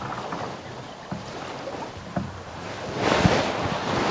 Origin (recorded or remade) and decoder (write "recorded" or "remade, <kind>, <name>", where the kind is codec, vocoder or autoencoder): remade, vocoder, BigVGAN v2